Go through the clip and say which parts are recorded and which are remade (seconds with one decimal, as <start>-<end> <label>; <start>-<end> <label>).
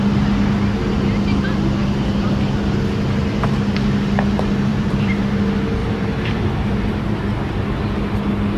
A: 0.0-4.7 recorded; 4.7-5.2 remade; 5.2-5.8 recorded; 5.8-7.2 remade; 7.2-8.6 recorded